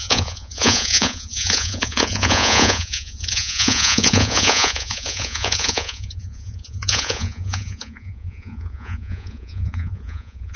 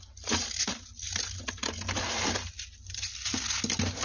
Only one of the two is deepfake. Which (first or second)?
first